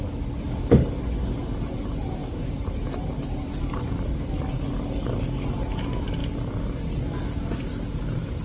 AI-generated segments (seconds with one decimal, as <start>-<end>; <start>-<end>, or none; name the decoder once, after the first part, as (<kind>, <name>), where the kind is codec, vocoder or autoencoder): 2.2-4.7 (vocoder, BigVGAN v2)